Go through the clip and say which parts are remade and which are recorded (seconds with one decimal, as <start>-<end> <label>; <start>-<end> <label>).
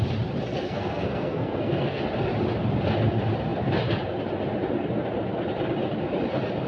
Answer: 0.0-0.5 recorded; 0.5-2.0 remade; 2.0-6.7 recorded